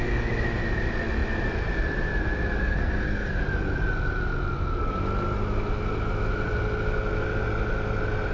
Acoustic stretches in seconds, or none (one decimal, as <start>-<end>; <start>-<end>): 0.0-2.6; 3.4-8.3